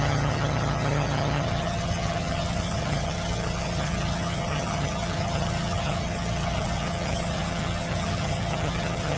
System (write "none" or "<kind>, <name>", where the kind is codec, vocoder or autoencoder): vocoder, HiFi-GAN